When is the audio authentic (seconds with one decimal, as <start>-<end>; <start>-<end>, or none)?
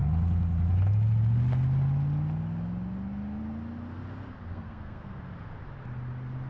0.0-4.5; 5.1-6.5